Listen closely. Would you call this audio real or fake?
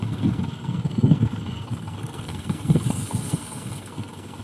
fake